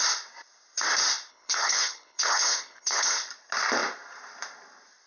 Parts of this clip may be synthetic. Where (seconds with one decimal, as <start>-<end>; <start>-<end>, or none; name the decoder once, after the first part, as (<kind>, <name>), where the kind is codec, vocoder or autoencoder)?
1.3-3.2 (codec, HILCodec)